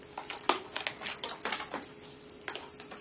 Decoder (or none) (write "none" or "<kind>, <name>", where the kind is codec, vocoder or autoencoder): none